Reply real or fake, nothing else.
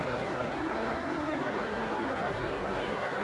fake